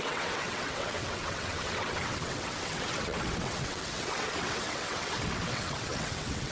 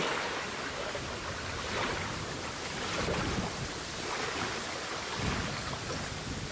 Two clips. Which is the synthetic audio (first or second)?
first